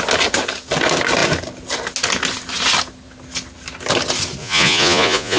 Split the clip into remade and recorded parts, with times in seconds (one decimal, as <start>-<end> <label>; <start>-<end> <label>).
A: 0.0-4.4 recorded; 4.4-5.4 remade